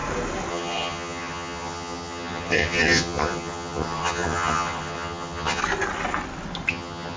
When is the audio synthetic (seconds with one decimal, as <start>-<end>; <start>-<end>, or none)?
0.5-5.6; 6.7-7.2